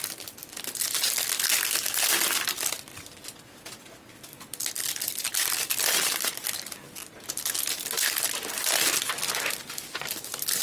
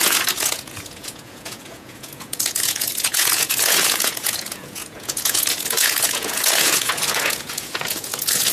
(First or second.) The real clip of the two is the first